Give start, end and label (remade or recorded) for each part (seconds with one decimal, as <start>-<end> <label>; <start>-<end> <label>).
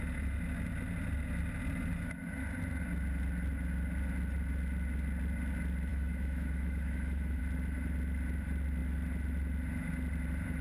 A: 0.0-5.9 recorded; 5.9-7.4 remade; 7.4-10.6 recorded